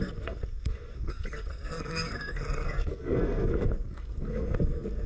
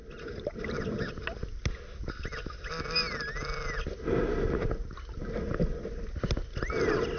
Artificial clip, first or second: first